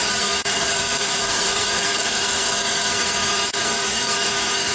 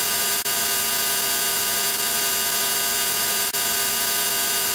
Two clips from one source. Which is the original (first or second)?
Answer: second